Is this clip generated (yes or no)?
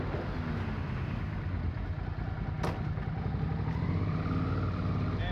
no